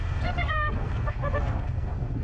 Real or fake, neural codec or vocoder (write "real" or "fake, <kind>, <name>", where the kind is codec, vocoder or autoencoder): fake, codec, SNAC